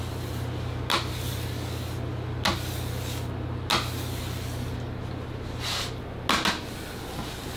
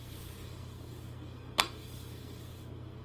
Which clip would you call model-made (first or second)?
second